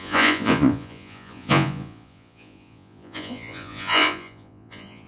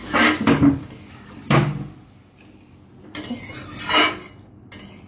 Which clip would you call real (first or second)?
second